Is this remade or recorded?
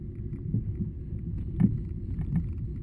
recorded